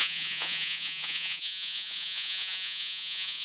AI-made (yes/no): yes